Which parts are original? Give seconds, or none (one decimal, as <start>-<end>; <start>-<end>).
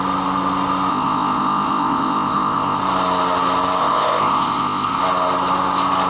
0.0-0.9; 2.8-3.8; 5.0-6.1